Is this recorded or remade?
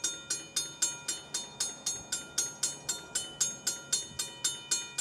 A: recorded